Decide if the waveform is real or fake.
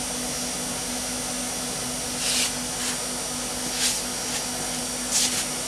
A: real